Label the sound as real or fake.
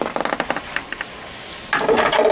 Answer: real